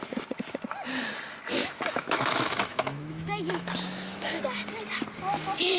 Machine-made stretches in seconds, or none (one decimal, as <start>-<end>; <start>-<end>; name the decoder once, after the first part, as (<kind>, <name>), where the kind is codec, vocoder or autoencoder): 1.6-4.4 (autoencoder, DAC-VAE)